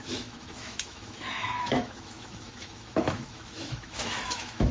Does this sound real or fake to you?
fake